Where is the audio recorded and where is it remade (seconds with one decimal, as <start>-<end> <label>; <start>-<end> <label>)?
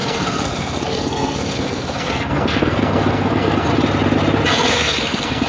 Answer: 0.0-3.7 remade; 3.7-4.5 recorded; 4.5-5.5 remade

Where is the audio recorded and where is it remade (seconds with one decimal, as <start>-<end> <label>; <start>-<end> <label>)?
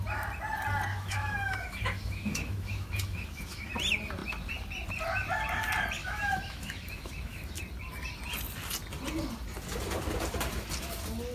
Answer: 0.0-0.9 recorded; 0.9-3.7 remade; 3.7-6.0 recorded; 6.0-7.6 remade; 7.6-11.3 recorded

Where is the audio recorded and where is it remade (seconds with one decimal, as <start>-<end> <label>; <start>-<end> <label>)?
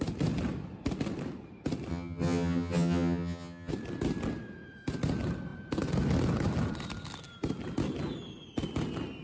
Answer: 0.0-1.9 recorded; 1.9-3.7 remade; 3.7-9.2 recorded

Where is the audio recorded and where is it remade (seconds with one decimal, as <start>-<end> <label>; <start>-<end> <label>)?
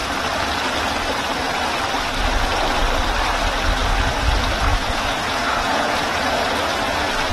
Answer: 0.0-4.7 recorded; 4.7-6.4 remade; 6.4-7.3 recorded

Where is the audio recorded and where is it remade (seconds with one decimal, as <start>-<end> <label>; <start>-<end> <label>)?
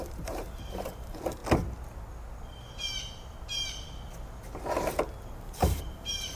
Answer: 0.0-1.4 remade; 1.4-5.2 recorded; 5.2-6.4 remade